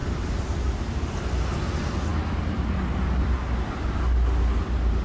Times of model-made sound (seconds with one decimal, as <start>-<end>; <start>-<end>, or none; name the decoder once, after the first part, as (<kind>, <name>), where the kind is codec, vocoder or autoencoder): none